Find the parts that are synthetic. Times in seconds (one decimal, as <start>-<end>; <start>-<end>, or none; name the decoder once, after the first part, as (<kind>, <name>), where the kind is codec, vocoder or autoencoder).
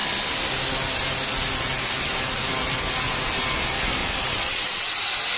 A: 4.0-5.0 (vocoder, WaveNeXt)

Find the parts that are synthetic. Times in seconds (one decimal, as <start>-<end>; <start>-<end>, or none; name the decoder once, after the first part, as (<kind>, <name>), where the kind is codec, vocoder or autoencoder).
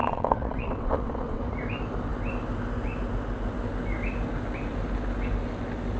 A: 0.0-1.4 (vocoder, WaveNeXt)